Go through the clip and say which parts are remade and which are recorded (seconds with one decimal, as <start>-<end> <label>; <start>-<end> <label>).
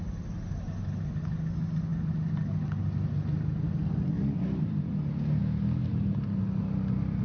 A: 0.0-7.2 recorded